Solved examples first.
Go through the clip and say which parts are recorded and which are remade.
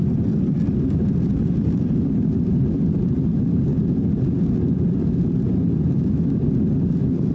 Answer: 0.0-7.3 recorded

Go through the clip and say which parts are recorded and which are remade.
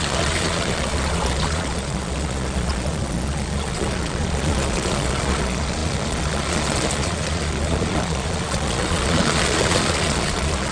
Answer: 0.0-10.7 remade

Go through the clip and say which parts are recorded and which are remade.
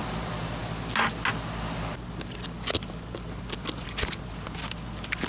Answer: 0.0-5.3 recorded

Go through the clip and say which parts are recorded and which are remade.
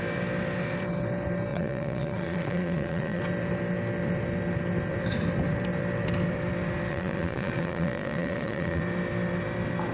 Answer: 0.0-1.5 recorded; 1.5-3.2 remade; 3.2-6.9 recorded; 6.9-8.8 remade; 8.8-9.9 recorded